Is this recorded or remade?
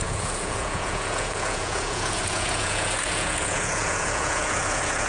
remade